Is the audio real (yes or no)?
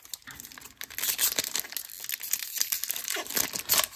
yes